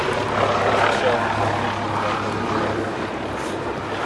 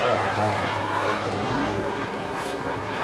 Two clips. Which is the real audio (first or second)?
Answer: first